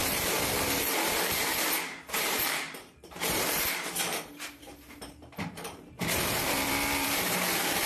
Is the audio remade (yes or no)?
yes